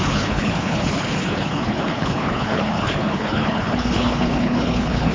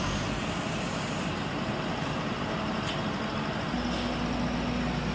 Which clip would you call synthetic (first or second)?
first